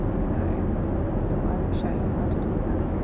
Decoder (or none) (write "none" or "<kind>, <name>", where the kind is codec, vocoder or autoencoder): none